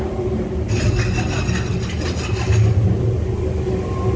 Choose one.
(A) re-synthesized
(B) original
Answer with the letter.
B